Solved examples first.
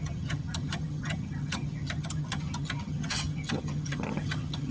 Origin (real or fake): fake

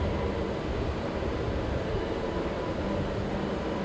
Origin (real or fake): real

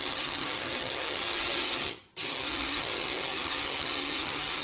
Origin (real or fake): fake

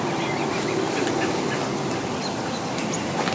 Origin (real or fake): real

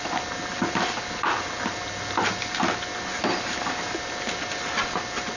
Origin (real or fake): real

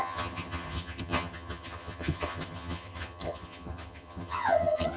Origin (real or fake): fake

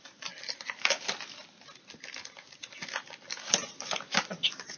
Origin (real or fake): real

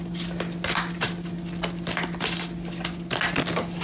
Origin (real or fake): real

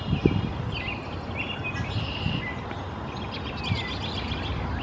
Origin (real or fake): real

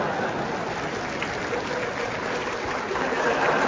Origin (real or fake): real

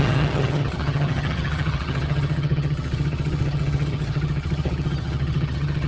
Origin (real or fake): fake